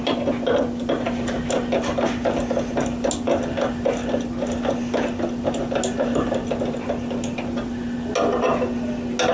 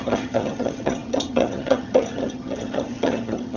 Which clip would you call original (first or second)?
first